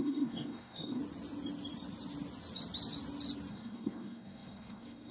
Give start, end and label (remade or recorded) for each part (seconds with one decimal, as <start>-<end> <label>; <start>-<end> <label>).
0.0-1.0 remade; 1.0-3.5 recorded; 3.5-5.1 remade